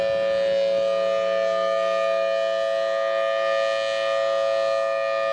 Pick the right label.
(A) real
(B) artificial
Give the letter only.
A